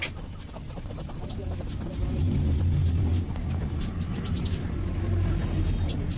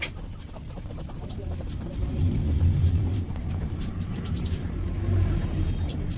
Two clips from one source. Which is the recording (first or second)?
first